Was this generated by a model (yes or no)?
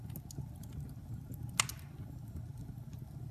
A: no